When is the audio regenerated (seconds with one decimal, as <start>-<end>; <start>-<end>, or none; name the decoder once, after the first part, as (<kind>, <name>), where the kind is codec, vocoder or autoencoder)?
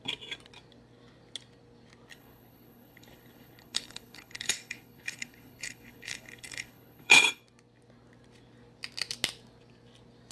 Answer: 2.1-7.4 (codec, HILCodec)